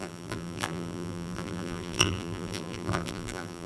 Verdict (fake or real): fake